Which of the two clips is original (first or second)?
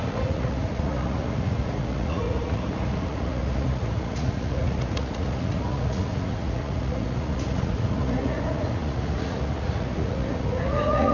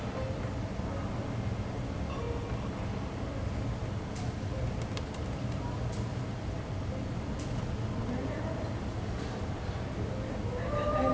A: second